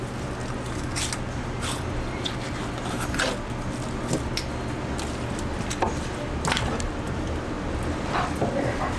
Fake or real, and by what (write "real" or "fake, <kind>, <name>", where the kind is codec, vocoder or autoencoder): real